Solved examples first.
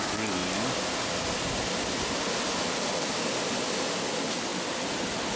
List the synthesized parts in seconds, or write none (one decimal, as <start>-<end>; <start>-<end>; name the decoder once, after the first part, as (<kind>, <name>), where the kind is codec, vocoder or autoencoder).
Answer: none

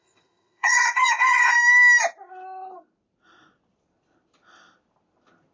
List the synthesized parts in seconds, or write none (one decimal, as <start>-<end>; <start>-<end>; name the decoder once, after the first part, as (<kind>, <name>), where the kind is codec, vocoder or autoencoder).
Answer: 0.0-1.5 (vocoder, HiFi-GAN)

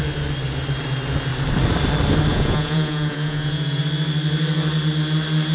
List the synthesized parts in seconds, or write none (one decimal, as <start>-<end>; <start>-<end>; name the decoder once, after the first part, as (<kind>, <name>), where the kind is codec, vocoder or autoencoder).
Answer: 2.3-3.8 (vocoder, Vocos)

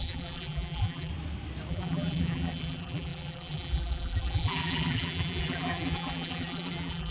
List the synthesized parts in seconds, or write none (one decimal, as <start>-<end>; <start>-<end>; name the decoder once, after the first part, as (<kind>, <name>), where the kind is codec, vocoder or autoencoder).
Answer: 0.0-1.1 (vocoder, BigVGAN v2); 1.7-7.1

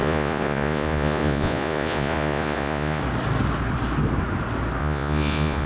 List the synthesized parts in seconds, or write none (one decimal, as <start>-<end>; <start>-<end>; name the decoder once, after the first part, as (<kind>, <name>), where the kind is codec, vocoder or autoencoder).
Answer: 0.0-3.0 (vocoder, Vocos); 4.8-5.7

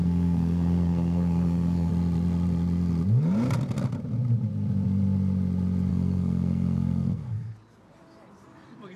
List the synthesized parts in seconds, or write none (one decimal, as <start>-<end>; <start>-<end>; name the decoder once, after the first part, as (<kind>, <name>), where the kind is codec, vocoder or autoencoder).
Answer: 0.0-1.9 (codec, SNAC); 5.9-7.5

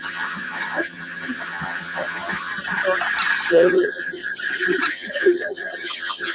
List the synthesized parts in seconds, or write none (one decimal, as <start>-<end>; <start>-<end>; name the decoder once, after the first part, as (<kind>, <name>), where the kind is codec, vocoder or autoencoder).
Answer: 0.0-2.5 (vocoder, HiFi-GAN); 3.5-4.2; 4.9-6.3

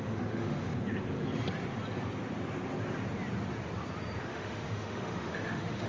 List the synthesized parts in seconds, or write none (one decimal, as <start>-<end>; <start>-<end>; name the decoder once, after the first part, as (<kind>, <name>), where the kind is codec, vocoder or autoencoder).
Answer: 0.0-0.7 (autoencoder, DAC-VAE); 4.2-5.9